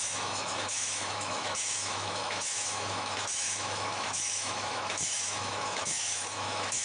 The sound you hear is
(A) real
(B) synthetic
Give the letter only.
B